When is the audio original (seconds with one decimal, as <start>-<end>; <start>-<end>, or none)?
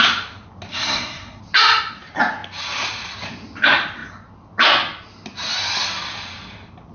0.0-0.7; 1.4-6.9